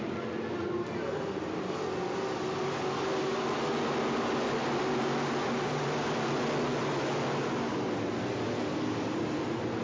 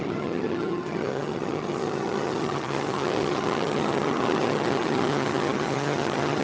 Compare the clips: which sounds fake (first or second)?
second